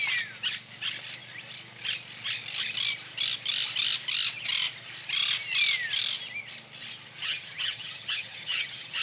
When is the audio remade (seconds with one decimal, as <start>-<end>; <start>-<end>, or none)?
7.2-9.0